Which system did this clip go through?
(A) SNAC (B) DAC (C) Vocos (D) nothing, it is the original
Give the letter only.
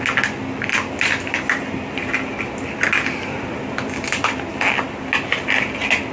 D